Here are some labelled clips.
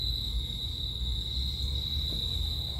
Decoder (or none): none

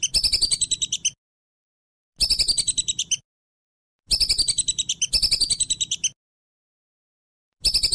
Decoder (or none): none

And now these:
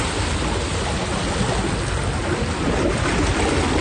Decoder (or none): none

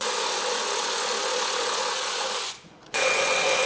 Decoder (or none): vocoder, Vocos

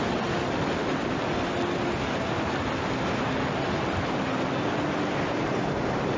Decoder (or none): none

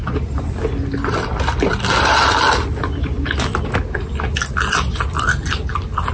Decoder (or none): none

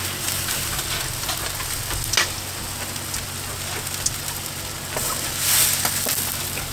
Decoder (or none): none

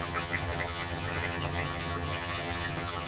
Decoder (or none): vocoder, HiFi-GAN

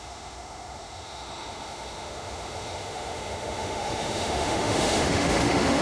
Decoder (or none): autoencoder, DAC-VAE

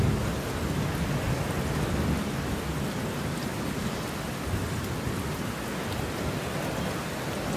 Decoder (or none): none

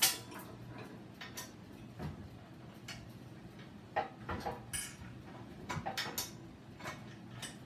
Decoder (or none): none